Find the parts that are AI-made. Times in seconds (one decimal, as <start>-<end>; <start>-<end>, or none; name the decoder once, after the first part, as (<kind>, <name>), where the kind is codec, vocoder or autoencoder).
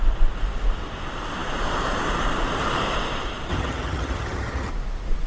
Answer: 3.5-4.7 (vocoder, HiFi-GAN)